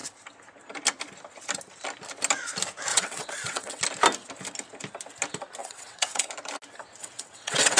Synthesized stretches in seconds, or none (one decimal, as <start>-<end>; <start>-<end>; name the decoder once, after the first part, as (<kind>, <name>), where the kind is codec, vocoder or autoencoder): 2.9-3.8 (vocoder, WaveNeXt); 5.6-6.3; 7.0-7.8